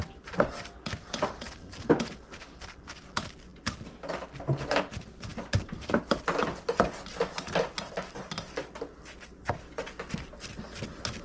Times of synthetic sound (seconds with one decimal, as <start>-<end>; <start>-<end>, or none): none